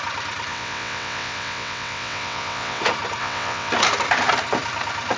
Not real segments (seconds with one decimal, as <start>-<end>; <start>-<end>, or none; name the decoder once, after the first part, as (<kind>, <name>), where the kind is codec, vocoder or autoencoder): 0.5-2.8 (vocoder, WaveNeXt); 3.2-3.7